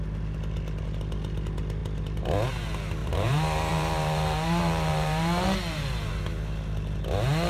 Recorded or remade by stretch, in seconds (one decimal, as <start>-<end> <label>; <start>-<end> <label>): 0.0-3.0 recorded; 3.0-6.1 remade; 6.1-7.5 recorded